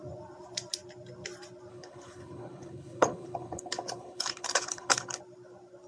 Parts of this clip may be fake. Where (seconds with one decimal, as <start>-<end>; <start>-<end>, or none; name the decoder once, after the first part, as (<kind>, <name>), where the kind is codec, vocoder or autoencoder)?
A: 1.7-5.2 (codec, HILCodec)